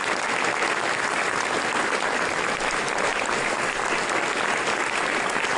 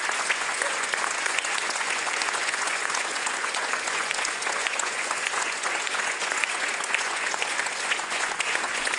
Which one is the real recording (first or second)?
first